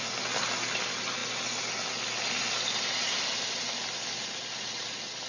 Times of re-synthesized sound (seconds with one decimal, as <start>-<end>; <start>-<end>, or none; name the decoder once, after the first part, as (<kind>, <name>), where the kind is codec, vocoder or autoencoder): none

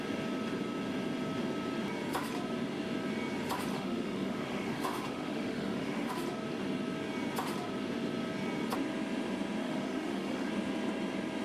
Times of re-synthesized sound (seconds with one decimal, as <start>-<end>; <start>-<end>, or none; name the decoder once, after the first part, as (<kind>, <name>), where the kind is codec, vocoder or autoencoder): 3.7-6.1 (autoencoder, DAC-VAE); 9.6-10.5

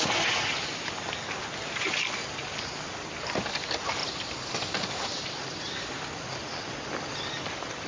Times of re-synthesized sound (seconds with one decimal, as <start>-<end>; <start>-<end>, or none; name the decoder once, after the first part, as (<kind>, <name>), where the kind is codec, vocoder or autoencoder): none

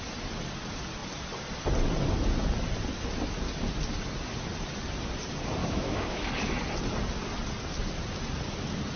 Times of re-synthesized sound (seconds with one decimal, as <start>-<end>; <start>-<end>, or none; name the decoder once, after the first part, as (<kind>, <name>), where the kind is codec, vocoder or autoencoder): 5.6-6.3 (autoencoder, DAC-VAE)

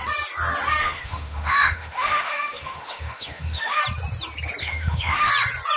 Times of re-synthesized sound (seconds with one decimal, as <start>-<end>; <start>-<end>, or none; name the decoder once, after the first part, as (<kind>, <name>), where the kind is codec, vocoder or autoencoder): 0.8-3.8 (autoencoder, DAC-VAE); 4.6-5.3

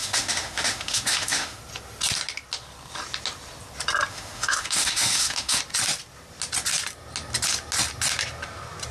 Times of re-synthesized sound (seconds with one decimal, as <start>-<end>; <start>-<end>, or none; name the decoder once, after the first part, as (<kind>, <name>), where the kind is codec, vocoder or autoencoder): 0.0-1.6 (autoencoder, DAC-VAE); 4.1-5.6